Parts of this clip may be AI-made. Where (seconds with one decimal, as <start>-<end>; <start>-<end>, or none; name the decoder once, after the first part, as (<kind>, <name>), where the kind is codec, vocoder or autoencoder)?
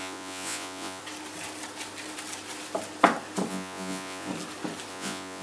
0.0-1.0 (vocoder, Vocos); 3.5-4.3; 4.9-5.4